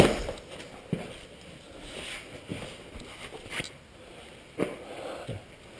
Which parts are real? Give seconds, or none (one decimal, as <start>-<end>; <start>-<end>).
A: 0.0-5.8